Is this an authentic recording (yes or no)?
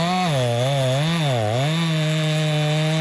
yes